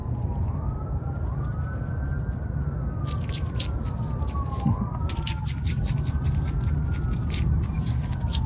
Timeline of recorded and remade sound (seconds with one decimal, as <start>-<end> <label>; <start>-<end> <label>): 0.0-1.6 remade; 1.6-8.5 recorded